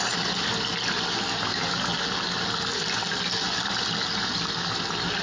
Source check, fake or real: real